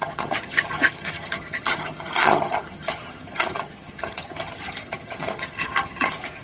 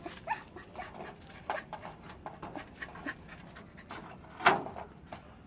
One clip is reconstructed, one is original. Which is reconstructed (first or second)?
first